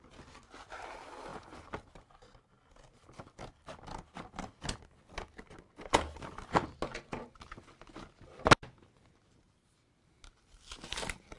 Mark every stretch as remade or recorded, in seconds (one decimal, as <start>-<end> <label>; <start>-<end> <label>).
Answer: 0.0-11.4 recorded